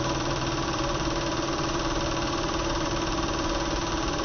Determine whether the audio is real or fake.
fake